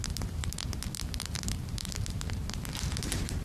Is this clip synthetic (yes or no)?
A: yes